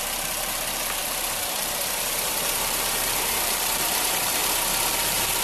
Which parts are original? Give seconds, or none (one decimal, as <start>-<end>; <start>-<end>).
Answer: 4.4-4.9